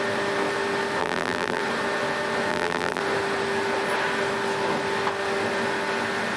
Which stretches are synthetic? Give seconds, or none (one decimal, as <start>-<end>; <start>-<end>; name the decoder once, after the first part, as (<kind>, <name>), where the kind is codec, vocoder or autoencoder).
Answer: 1.0-1.6 (vocoder, BigVGAN v2); 2.5-3.0

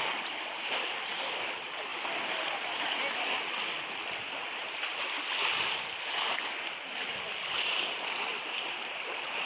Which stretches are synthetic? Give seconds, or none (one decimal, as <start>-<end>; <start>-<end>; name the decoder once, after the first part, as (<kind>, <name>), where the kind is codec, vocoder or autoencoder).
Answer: 0.0-1.9 (vocoder, BigVGAN v2); 7.0-9.5

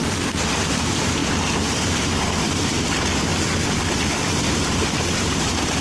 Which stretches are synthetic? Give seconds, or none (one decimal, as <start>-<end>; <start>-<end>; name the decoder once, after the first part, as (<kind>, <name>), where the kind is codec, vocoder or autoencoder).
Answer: 0.0-3.3 (vocoder, BigVGAN v2); 4.0-5.8

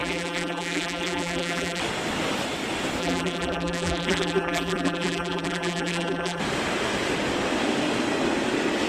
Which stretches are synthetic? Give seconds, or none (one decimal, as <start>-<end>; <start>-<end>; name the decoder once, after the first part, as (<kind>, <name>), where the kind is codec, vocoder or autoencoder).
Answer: 0.0-1.8 (vocoder, BigVGAN v2); 3.0-6.4

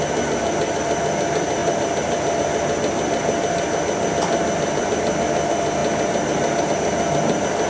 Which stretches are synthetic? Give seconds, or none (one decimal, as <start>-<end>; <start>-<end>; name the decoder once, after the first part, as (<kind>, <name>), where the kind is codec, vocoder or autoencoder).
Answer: 1.6-2.4 (vocoder, BigVGAN v2)

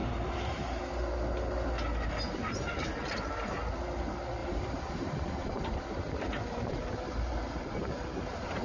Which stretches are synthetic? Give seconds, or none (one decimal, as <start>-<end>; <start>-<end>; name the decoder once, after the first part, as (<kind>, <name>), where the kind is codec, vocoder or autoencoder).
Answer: 0.0-0.8 (vocoder, BigVGAN v2); 4.4-8.6

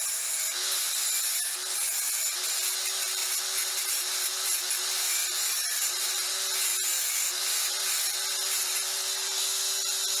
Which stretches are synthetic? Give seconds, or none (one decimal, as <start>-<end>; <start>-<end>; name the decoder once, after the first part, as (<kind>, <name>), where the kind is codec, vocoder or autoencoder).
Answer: 5.2-6.3 (vocoder, BigVGAN v2); 6.7-9.4

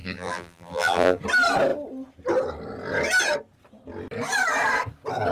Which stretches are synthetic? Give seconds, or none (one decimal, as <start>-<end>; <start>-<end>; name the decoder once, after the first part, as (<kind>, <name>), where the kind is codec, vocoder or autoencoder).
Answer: 0.0-1.2 (vocoder, BigVGAN v2)